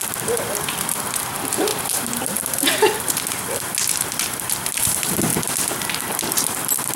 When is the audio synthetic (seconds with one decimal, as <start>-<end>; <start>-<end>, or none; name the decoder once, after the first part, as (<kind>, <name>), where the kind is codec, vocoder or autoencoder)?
none